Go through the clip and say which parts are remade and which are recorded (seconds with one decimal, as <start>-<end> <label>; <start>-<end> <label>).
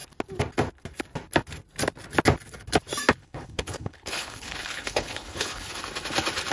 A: 0.0-3.2 recorded; 3.2-5.8 remade; 5.8-6.5 recorded